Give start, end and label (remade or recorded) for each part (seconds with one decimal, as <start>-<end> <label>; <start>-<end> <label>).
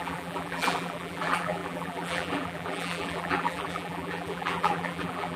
0.0-5.4 remade